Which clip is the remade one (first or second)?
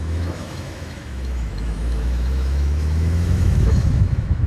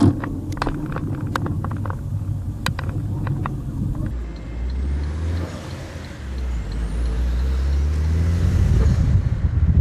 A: first